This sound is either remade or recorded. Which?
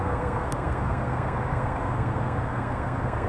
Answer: remade